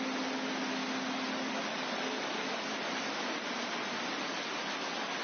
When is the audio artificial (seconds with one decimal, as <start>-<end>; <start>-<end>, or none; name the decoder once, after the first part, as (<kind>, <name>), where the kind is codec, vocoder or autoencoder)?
none